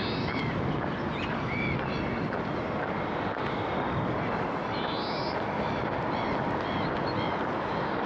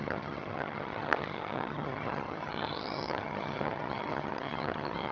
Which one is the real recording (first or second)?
first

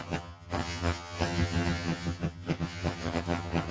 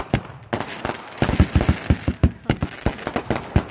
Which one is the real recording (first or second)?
second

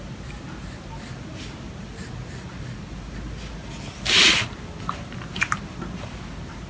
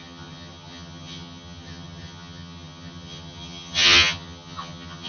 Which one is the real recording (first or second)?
first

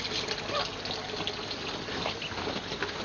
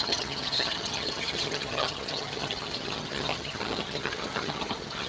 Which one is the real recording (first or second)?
first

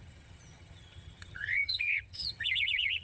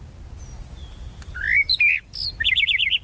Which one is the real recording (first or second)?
second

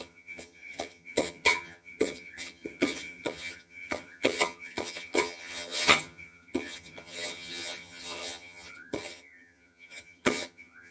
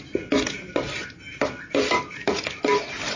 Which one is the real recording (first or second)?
second